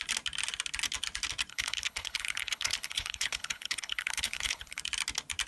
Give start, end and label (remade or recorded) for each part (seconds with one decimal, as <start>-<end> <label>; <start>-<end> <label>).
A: 0.0-1.5 recorded; 1.5-4.8 remade; 4.8-5.5 recorded